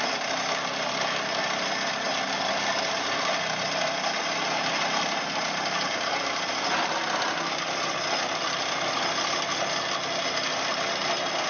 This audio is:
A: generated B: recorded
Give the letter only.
B